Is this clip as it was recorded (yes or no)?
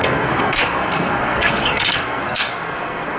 no